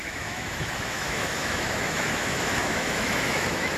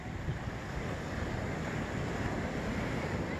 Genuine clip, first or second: second